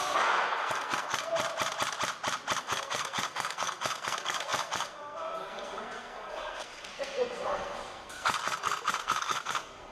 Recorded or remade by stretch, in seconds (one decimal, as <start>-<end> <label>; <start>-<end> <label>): 0.0-1.3 remade; 1.3-2.6 recorded; 2.6-9.9 remade